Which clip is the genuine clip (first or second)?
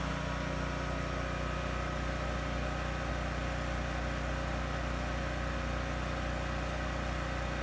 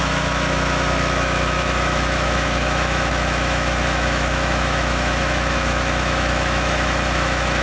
first